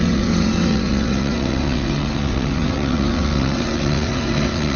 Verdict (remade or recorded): remade